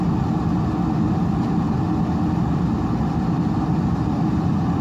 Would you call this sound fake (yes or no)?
no